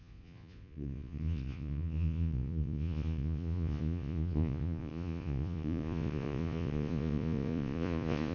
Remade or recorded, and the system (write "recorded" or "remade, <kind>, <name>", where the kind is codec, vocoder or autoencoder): remade, vocoder, Vocos